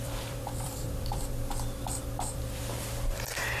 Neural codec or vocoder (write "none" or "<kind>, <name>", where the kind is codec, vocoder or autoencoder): vocoder, BigVGAN v2